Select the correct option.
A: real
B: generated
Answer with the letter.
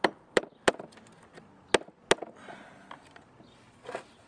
A